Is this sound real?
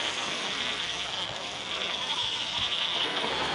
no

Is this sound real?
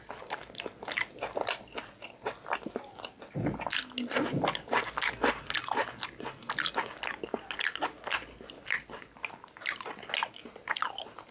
yes